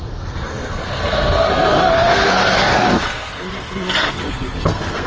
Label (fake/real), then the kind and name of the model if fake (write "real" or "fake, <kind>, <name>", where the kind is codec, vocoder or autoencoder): fake, codec, SNAC